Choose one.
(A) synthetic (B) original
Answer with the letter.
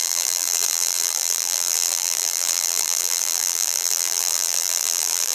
A